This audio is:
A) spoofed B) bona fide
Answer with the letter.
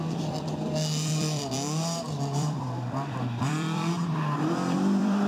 A